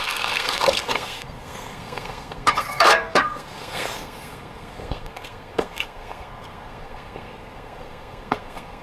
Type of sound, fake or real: fake